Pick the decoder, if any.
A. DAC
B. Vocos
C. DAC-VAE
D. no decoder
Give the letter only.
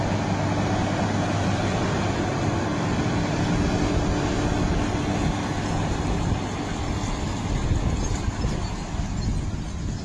D